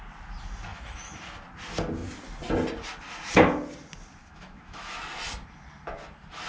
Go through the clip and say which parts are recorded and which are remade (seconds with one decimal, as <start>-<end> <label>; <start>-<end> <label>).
0.0-0.7 recorded; 0.7-1.2 remade; 1.2-4.2 recorded; 4.2-5.0 remade; 5.0-6.5 recorded